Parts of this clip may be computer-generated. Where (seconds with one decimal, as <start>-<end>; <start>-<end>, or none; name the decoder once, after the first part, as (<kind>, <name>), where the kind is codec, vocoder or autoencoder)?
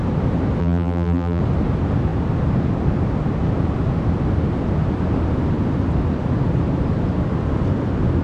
0.6-1.4 (vocoder, BigVGAN v2)